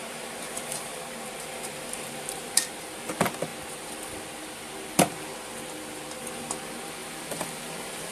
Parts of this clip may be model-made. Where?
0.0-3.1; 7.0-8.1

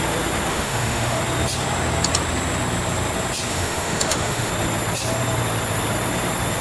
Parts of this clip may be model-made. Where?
0.5-1.2; 3.5-4.5

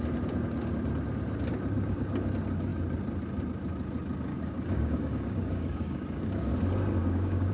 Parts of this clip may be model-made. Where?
4.3-6.5; 7.0-7.5

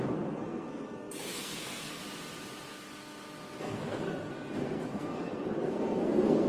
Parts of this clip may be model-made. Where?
0.0-2.0; 3.6-6.5

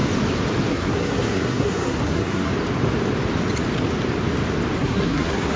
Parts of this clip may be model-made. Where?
0.7-2.5; 4.8-5.6